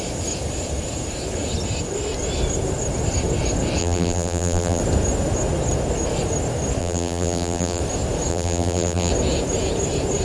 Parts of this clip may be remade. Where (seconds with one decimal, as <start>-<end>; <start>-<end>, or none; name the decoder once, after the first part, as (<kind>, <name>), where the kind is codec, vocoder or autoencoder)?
3.8-4.8 (vocoder, BigVGAN v2); 6.8-7.8; 8.3-9.1